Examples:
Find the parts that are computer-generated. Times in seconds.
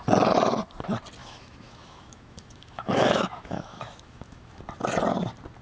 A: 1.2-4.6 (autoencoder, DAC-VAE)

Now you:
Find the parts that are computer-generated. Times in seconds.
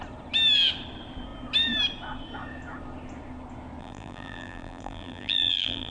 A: 3.8-5.9 (vocoder, BigVGAN v2)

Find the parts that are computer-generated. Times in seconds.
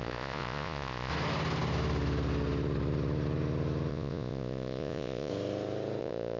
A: 0.0-1.1 (vocoder, Vocos); 3.9-5.3; 6.0-6.4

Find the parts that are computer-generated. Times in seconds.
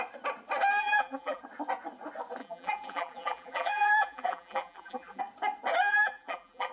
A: 0.8-1.4 (vocoder, BigVGAN v2); 2.4-5.2; 5.9-6.7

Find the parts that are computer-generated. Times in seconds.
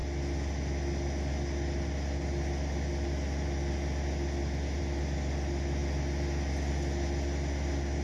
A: none